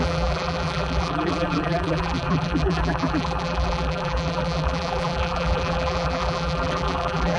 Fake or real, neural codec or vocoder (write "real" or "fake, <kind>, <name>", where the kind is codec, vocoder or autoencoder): fake, vocoder, BigVGAN v2